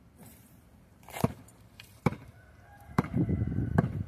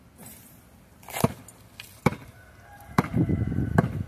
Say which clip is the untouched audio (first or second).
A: second